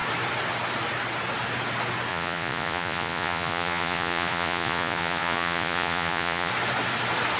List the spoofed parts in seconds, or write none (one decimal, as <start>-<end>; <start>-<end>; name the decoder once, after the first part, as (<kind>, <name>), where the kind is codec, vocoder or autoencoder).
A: 2.1-6.5 (vocoder, Vocos)